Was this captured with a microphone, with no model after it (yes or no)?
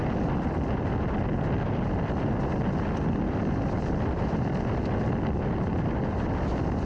yes